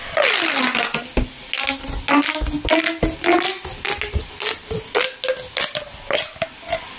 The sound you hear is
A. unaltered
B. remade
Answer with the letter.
A